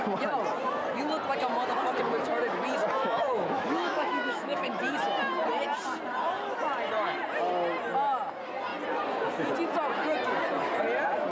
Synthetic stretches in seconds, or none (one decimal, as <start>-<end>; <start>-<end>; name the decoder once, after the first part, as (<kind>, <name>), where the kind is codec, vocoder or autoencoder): 3.0-4.8 (autoencoder, DAC-VAE)